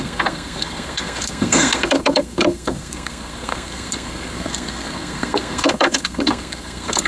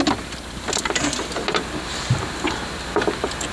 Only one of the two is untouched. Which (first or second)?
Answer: second